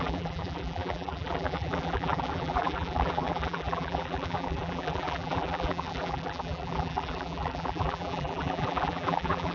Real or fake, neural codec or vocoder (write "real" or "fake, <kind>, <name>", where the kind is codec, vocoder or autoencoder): fake, vocoder, BigVGAN v2